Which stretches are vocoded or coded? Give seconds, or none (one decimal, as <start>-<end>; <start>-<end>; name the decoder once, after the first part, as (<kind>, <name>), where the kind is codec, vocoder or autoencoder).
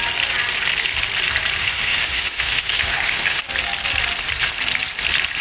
1.6-3.4 (autoencoder, DAC-VAE)